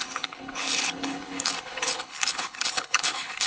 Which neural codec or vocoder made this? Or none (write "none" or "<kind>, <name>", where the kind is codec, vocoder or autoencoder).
codec, HILCodec